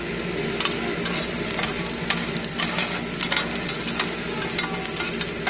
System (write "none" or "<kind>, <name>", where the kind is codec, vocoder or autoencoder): none